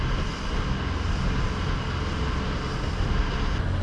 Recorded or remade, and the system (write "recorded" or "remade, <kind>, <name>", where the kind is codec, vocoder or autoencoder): recorded